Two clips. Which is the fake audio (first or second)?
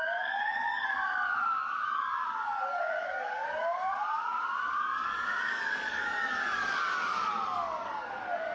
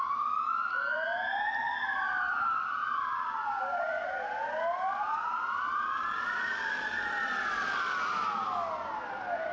first